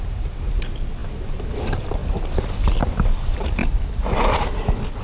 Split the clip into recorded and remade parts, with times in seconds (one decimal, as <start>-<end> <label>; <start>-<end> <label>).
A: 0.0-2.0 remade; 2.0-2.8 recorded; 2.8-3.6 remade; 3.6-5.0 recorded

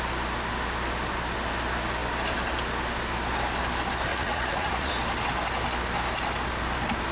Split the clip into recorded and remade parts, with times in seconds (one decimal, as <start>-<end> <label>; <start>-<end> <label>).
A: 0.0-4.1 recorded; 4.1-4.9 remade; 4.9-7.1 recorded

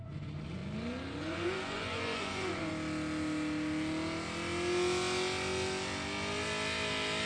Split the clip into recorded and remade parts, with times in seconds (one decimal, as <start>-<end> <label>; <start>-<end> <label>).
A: 0.0-0.6 remade; 0.6-1.2 recorded; 1.2-2.7 remade; 2.7-7.3 recorded

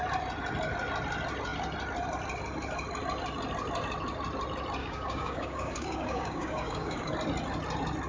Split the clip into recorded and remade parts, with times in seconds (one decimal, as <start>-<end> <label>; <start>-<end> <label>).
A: 0.0-4.8 recorded; 4.8-7.1 remade; 7.1-8.1 recorded

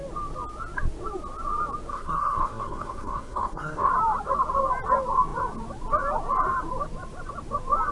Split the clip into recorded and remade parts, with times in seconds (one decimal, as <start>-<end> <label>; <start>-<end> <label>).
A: 0.0-1.9 recorded; 1.9-3.9 remade; 3.9-7.9 recorded

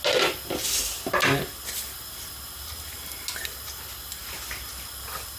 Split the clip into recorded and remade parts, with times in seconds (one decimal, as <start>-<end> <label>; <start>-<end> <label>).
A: 0.0-5.4 recorded